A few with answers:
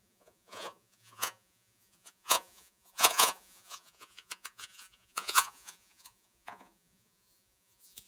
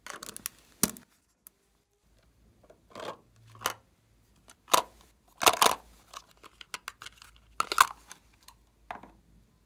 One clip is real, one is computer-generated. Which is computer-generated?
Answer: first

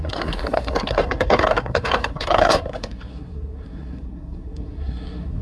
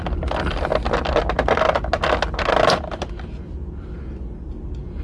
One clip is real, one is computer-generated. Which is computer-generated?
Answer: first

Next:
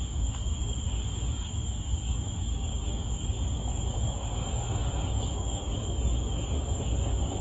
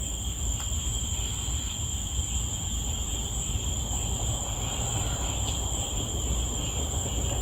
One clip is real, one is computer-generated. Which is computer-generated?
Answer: first